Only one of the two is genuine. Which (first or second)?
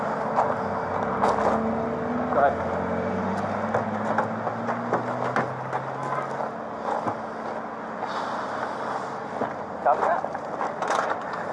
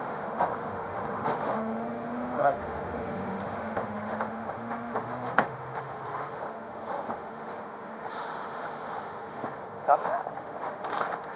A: first